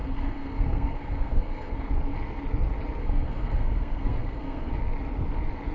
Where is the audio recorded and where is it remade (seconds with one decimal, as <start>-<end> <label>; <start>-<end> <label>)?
0.0-1.9 remade; 1.9-3.0 recorded; 3.0-4.7 remade; 4.7-5.7 recorded